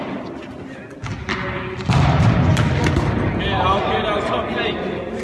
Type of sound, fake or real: real